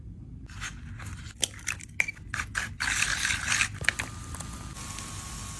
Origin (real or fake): real